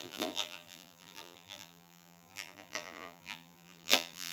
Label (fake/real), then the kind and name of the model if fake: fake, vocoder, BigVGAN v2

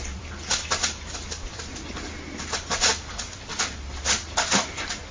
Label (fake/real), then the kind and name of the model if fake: fake, vocoder, BigVGAN v2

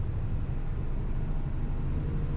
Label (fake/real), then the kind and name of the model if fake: real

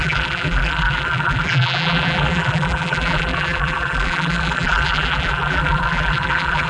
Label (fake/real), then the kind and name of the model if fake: fake, vocoder, BigVGAN v2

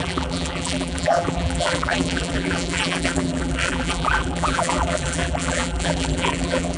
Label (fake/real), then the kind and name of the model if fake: fake, vocoder, BigVGAN v2